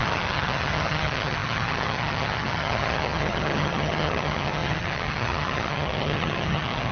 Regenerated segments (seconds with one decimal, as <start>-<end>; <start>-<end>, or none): 0.0-6.9